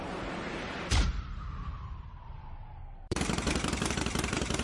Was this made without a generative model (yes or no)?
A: no